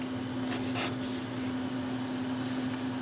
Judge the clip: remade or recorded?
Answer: recorded